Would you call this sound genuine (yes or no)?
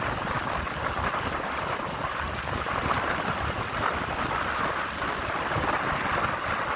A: yes